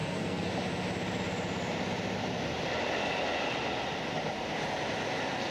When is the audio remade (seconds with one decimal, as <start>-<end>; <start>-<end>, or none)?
0.0-0.5